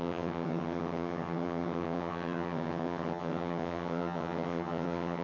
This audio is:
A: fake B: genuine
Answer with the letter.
A